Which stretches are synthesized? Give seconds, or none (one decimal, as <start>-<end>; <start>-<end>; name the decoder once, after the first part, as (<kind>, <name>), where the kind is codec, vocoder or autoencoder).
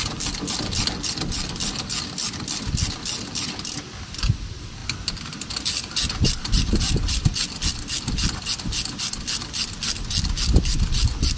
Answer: 0.0-4.8 (vocoder, BigVGAN v2); 5.3-11.4